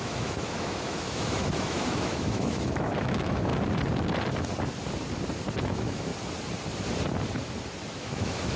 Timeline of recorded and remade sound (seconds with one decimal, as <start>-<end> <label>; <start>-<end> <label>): 0.0-3.5 remade; 3.5-5.6 recorded; 5.6-6.1 remade; 6.1-7.9 recorded; 7.9-8.6 remade